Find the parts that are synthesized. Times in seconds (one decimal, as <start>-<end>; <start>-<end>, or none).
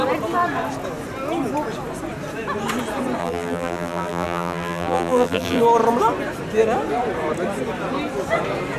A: 3.2-5.6